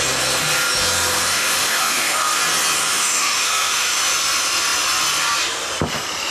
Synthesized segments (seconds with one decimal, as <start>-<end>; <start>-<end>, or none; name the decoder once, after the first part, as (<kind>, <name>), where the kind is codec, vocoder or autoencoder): 1.3-2.4 (autoencoder, DAC-VAE); 2.9-4.0